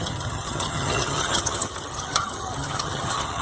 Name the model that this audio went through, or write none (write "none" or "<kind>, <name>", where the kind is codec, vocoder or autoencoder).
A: vocoder, HiFi-GAN